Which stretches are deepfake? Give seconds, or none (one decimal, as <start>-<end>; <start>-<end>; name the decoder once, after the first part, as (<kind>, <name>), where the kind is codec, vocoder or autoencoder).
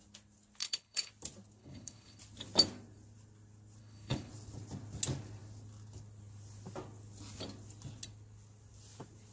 0.6-1.1 (codec, HILCodec); 1.6-2.2; 3.8-4.3